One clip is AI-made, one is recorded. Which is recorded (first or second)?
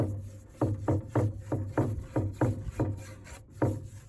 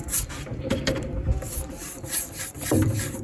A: first